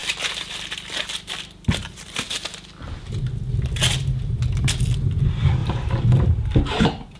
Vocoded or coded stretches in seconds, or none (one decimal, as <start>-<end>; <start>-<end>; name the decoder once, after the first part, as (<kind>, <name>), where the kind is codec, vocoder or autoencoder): 5.6-6.8 (vocoder, BigVGAN v2)